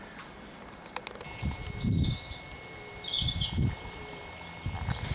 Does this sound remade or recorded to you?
recorded